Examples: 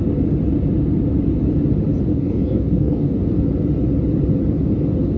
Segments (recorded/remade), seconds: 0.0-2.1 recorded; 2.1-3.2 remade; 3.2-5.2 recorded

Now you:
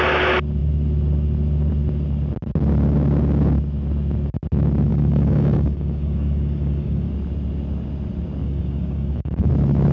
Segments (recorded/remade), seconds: 0.0-4.9 recorded; 4.9-7.1 remade; 7.1-8.4 recorded; 8.4-9.5 remade; 9.5-9.9 recorded

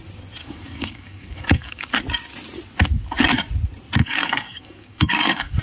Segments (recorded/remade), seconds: 0.0-0.4 recorded; 0.4-1.9 remade; 1.9-4.0 recorded; 4.0-5.6 remade

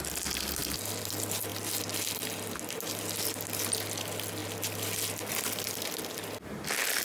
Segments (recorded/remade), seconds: 0.0-7.0 recorded

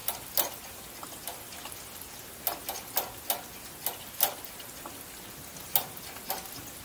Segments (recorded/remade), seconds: 0.0-6.8 recorded